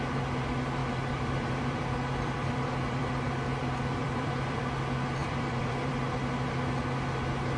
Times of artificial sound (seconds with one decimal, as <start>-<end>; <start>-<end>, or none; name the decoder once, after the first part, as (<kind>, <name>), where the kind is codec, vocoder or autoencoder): 0.8-3.1 (vocoder, BigVGAN v2); 4.0-4.6; 5.2-5.9